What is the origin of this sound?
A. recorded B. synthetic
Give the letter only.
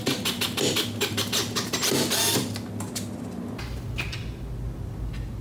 A